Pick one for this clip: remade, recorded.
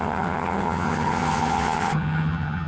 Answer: remade